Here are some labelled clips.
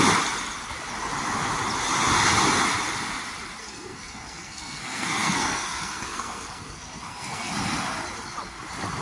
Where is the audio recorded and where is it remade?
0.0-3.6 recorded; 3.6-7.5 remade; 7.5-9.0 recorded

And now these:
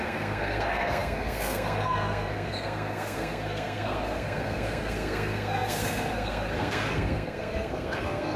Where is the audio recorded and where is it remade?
0.0-8.4 remade

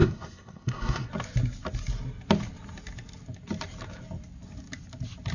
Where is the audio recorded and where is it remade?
0.0-1.1 remade; 1.1-5.3 recorded